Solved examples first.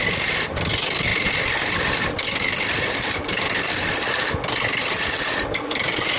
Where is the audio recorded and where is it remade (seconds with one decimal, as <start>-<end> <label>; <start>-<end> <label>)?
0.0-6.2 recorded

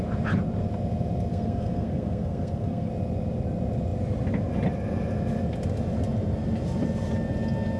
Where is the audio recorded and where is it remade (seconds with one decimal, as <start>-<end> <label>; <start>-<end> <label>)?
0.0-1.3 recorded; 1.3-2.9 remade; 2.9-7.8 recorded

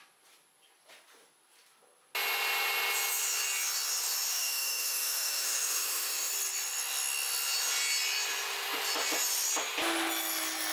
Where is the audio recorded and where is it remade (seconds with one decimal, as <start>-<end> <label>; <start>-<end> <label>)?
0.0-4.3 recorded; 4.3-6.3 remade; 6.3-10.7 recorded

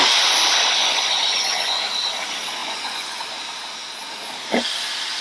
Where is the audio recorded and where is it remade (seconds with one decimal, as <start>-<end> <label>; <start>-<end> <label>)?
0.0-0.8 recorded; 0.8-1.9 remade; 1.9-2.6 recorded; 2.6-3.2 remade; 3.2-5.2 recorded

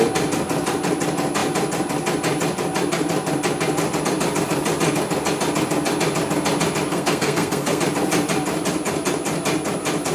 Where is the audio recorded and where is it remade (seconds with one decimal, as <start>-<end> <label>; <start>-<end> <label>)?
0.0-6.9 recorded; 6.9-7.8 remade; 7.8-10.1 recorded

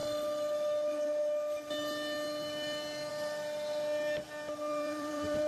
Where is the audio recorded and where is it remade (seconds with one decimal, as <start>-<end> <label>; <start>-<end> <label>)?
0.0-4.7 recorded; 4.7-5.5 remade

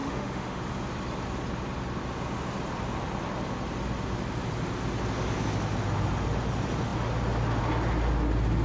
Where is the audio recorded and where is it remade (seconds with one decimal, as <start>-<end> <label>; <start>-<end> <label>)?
0.0-0.6 remade; 0.6-8.6 recorded

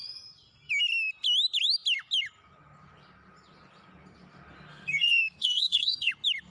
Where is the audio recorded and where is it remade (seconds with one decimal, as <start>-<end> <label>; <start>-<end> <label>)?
0.0-4.7 recorded; 4.7-6.1 remade; 6.1-6.5 recorded